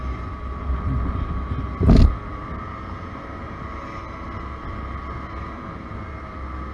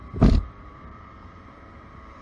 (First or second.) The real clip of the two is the first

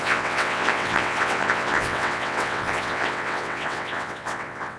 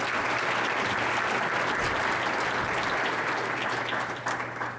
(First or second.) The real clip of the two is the second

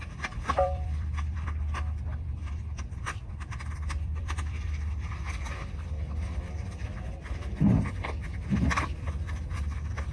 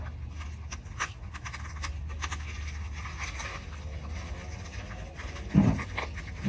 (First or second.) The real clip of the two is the second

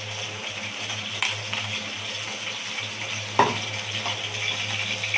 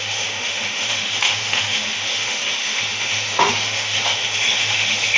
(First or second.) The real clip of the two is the first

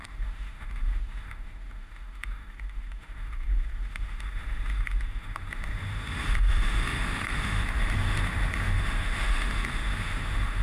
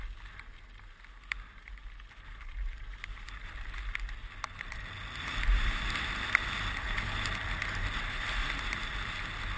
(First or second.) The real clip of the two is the second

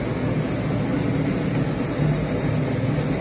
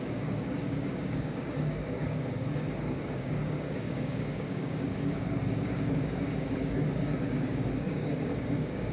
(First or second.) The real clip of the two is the first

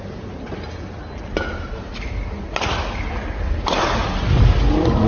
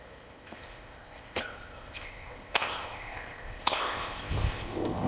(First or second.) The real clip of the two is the first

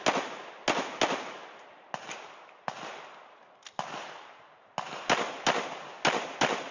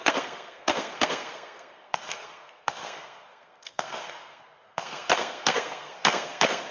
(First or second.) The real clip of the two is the first